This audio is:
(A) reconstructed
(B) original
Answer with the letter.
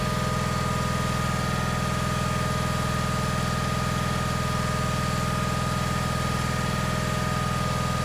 B